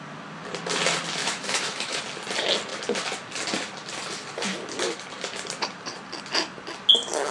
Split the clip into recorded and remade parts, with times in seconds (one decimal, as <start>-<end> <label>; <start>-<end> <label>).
0.0-1.2 recorded; 1.2-2.0 remade; 2.0-7.3 recorded